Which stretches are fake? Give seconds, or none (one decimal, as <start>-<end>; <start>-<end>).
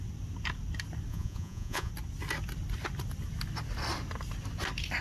1.1-1.9